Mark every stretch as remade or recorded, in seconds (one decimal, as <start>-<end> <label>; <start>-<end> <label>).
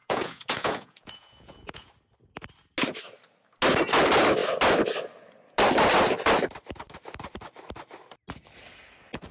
0.0-1.9 remade; 1.9-9.3 recorded